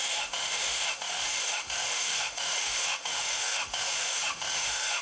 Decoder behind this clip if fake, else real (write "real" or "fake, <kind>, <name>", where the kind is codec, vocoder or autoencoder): fake, autoencoder, DAC-VAE